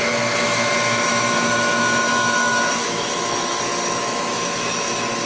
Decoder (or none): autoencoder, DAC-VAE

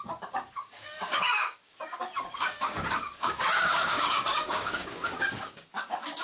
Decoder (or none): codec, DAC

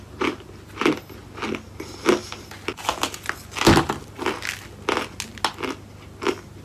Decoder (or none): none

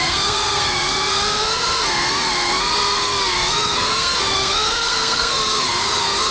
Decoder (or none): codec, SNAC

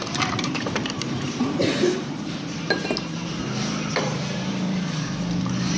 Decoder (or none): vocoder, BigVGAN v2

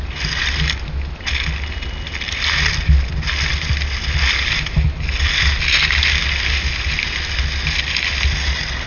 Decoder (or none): none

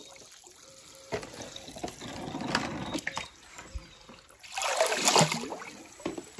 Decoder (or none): none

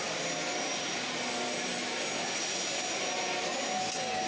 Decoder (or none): none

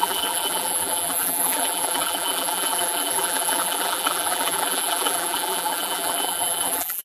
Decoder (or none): vocoder, BigVGAN v2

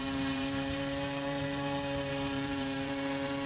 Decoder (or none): vocoder, BigVGAN v2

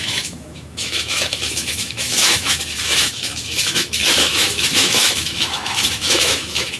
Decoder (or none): autoencoder, DAC-VAE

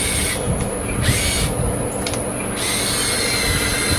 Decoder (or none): none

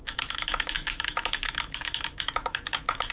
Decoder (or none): autoencoder, DAC-VAE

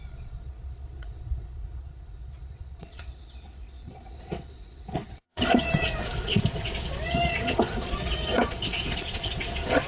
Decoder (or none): vocoder, Vocos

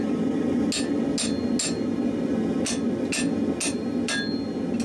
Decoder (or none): none